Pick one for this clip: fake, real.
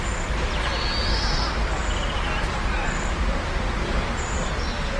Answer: real